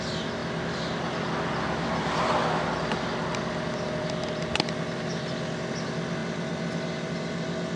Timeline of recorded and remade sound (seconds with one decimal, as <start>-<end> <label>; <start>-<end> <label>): 0.0-7.8 recorded